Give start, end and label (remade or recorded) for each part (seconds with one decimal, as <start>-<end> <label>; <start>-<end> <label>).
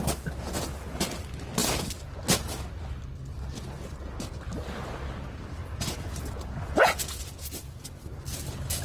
0.0-5.6 recorded; 5.6-8.0 remade; 8.0-8.8 recorded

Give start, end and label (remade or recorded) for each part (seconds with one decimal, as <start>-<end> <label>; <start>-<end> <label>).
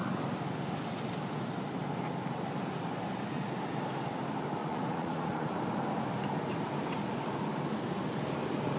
0.0-4.6 recorded; 4.6-5.6 remade; 5.6-8.8 recorded